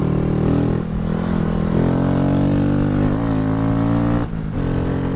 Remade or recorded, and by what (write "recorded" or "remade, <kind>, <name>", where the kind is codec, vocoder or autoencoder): recorded